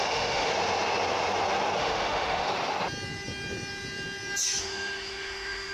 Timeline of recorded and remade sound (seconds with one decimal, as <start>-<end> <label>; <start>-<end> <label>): 0.0-0.5 remade; 0.5-1.8 recorded; 1.8-2.5 remade; 2.5-4.6 recorded; 4.6-5.7 remade